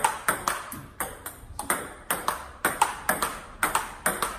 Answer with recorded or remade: recorded